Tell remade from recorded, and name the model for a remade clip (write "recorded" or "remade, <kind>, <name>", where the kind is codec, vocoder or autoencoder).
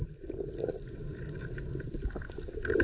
recorded